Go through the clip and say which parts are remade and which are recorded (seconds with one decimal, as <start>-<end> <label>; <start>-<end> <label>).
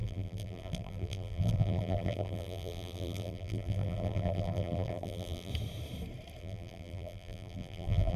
0.0-5.5 remade; 5.5-6.4 recorded; 6.4-8.2 remade